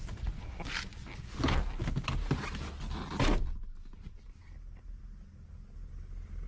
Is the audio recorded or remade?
recorded